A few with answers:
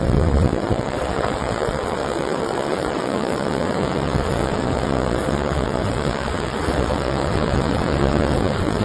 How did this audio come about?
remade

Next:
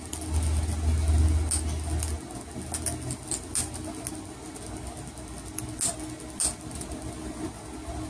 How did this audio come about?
recorded